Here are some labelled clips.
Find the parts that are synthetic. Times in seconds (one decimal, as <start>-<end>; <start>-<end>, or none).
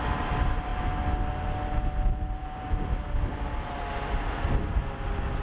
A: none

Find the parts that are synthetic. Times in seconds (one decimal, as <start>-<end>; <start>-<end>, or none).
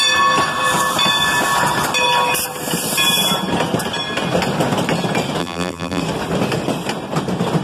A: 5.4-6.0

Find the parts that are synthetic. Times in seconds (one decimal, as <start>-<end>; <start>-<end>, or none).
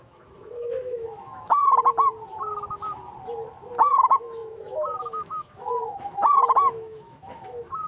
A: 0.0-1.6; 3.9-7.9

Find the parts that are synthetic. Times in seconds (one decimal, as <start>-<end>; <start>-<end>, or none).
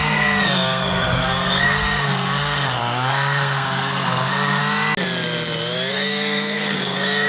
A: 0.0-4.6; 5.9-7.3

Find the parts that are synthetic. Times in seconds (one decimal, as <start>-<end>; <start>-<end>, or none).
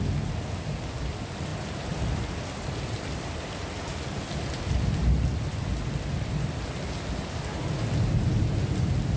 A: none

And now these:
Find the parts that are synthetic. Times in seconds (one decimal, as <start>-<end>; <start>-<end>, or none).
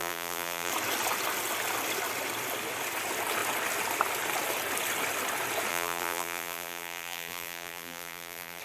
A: 0.0-0.7; 5.7-8.6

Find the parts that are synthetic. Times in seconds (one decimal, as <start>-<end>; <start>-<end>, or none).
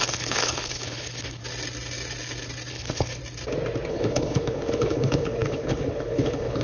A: 0.0-1.4; 2.7-3.2; 3.9-6.6